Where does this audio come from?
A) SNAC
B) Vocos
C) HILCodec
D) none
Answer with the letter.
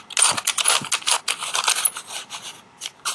D